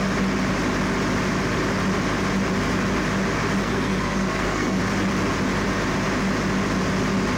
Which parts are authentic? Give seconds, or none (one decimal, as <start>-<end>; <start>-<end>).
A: 0.0-3.6; 4.8-7.4